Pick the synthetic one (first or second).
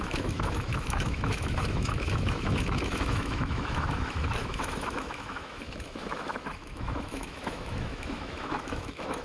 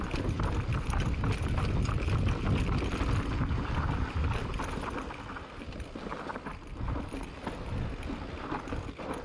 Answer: first